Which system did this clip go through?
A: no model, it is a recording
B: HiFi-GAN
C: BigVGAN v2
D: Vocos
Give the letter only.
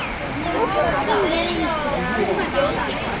A